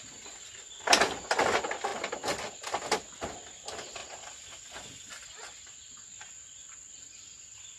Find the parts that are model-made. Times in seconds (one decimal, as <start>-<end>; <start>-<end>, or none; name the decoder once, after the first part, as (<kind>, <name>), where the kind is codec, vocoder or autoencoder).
none